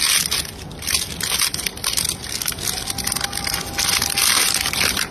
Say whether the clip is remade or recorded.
recorded